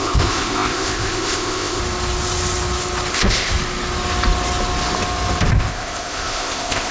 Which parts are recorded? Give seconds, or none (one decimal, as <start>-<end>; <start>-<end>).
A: 1.8-3.1; 3.5-5.5